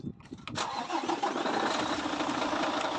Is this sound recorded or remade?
remade